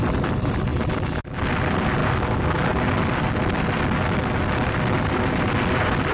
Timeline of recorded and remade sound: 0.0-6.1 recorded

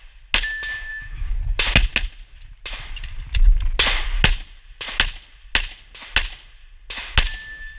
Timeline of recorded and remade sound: 0.0-0.9 recorded; 0.9-1.4 remade; 1.4-7.8 recorded

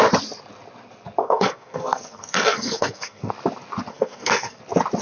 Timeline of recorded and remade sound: 0.0-1.2 recorded; 1.2-3.3 remade; 3.3-3.9 recorded; 3.9-4.6 remade; 4.6-5.0 recorded

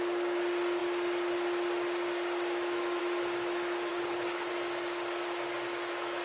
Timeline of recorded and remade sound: 0.0-3.9 recorded; 3.9-4.5 remade; 4.5-6.2 recorded

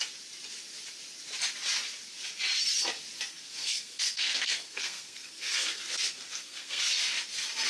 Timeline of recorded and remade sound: 0.0-3.3 recorded; 3.3-6.8 remade; 6.8-7.7 recorded

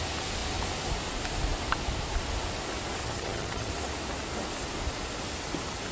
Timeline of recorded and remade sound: 0.0-3.0 recorded; 3.0-3.7 remade; 3.7-5.9 recorded

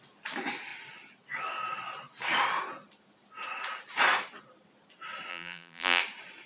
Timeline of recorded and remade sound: 0.0-5.3 recorded; 5.3-6.0 remade; 6.0-6.5 recorded

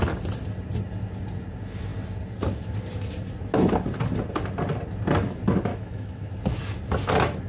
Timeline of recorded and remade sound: 0.0-5.7 recorded; 5.7-6.3 remade; 6.3-7.5 recorded